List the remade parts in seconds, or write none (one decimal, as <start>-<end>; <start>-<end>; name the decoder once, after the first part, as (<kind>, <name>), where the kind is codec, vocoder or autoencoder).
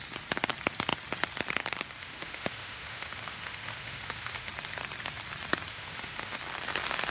2.0-4.5 (autoencoder, DAC-VAE); 5.7-6.4